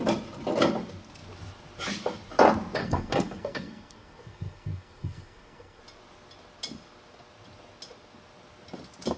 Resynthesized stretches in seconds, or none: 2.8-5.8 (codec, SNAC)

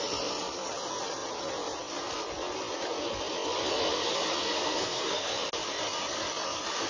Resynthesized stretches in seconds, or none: 4.4-5.3 (codec, SNAC)

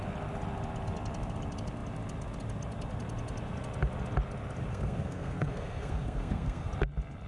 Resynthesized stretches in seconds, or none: 4.7-6.7 (codec, SNAC)

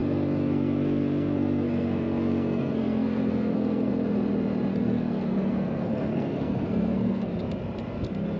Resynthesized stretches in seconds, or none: 0.0-3.9 (codec, SNAC); 4.7-7.3

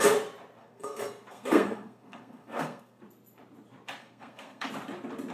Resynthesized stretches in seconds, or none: 0.6-3.0 (codec, SNAC); 4.0-4.7

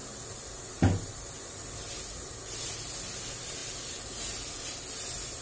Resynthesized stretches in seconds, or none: none